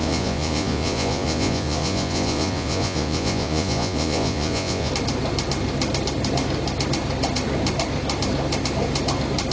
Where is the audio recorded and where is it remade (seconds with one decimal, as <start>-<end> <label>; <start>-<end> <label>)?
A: 0.0-4.9 remade; 4.9-9.5 recorded